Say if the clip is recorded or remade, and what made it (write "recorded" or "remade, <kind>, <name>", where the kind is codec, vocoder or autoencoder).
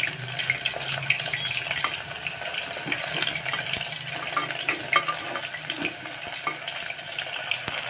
recorded